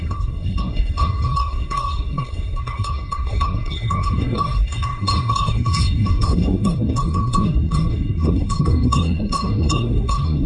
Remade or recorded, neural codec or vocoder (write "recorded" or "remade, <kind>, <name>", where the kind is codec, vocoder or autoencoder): remade, codec, SNAC